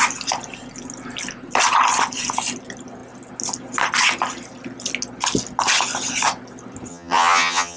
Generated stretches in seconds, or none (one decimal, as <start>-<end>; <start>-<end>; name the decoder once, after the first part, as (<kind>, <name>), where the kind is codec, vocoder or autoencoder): 6.9-7.8 (vocoder, HiFi-GAN)